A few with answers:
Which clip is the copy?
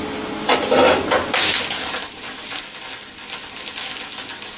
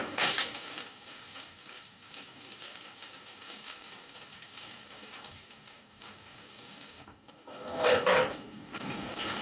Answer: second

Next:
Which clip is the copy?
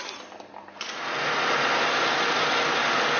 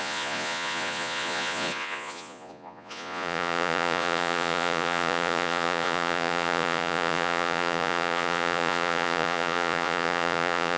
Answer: second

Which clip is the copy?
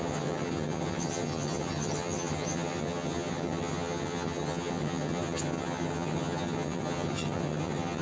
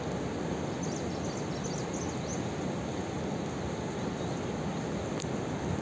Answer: first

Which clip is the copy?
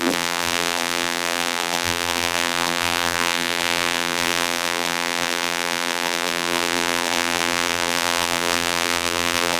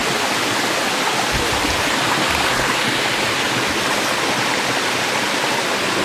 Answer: first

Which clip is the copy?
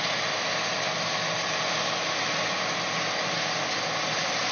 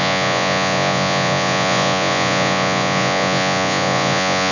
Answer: second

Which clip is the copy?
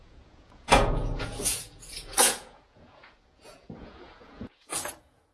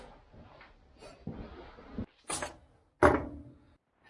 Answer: first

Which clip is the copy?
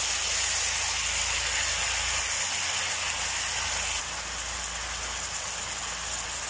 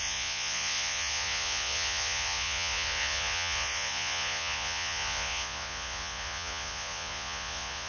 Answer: second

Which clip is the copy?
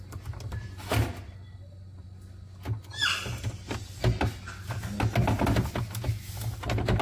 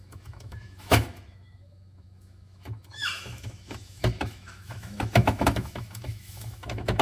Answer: second